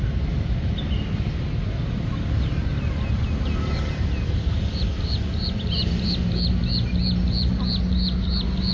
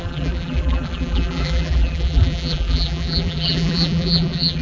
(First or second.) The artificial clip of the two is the second